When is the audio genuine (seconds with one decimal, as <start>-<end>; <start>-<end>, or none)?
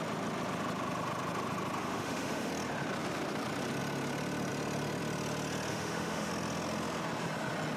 0.0-1.8; 2.5-5.7; 6.3-7.8